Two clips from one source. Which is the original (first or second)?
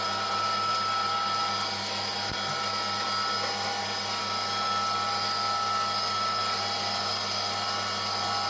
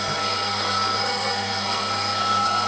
first